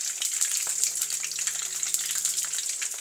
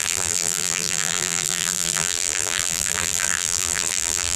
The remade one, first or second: second